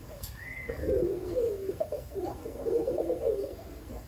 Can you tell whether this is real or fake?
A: fake